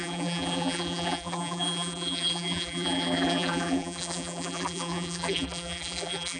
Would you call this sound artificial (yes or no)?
yes